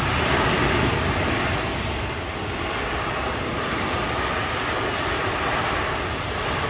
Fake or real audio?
real